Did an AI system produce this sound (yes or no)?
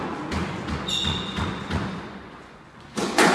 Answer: yes